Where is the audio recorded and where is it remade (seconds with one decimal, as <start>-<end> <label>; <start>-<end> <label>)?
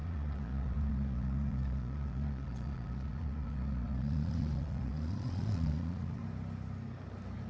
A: 0.0-6.2 remade; 6.2-7.5 recorded